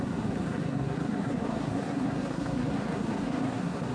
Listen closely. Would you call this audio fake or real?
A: fake